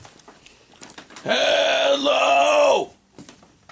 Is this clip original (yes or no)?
no